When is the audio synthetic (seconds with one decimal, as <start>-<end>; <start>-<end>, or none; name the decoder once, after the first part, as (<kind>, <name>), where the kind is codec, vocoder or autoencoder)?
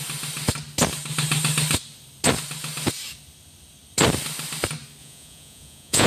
5.0-6.1 (vocoder, Vocos)